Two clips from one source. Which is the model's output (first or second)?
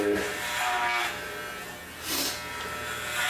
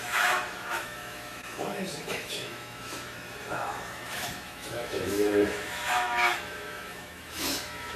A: second